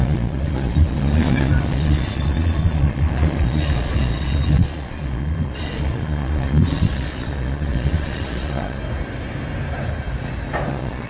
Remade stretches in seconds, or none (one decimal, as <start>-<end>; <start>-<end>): 0.0-8.8; 10.7-11.1